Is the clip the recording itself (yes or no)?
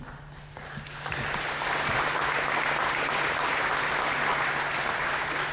yes